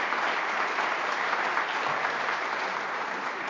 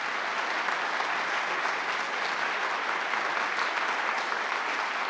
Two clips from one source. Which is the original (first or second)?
second